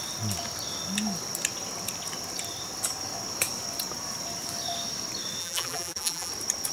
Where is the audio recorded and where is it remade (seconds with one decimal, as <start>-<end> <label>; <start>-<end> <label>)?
0.0-5.4 recorded; 5.4-6.3 remade; 6.3-6.7 recorded